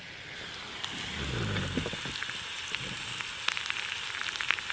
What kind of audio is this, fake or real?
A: real